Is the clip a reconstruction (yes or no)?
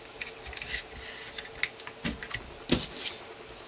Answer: no